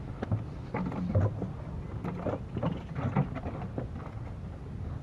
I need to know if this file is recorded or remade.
recorded